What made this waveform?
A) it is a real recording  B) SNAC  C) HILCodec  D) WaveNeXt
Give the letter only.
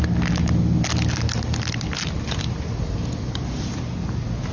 A